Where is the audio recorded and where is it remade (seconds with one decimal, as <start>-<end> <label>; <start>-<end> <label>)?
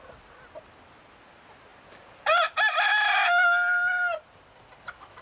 0.0-5.2 recorded